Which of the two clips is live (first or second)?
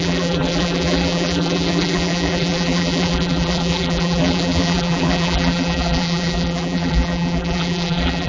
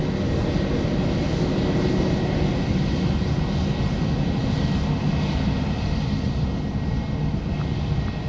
second